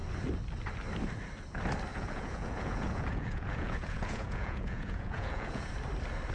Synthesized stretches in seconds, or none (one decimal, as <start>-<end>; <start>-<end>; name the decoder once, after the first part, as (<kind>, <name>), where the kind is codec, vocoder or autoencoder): 1.9-5.7 (vocoder, Vocos)